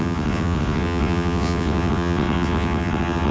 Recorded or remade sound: remade